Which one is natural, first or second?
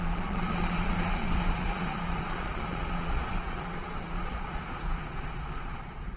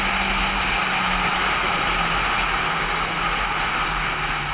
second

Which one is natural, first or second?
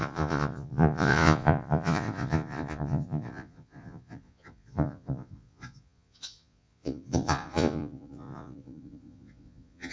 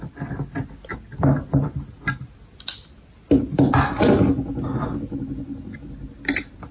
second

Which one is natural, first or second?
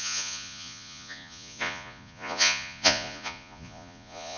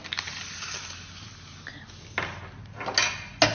second